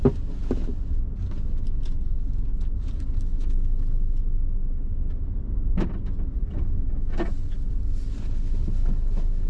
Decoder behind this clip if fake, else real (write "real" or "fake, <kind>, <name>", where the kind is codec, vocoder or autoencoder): real